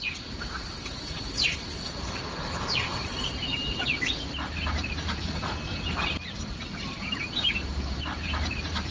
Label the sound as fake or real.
fake